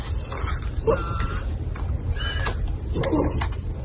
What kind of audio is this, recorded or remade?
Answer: recorded